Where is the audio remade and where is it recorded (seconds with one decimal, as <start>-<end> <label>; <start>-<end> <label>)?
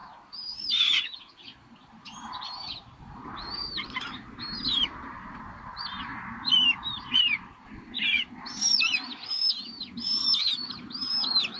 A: 0.0-2.4 recorded; 2.4-6.1 remade; 6.1-9.5 recorded; 9.5-11.6 remade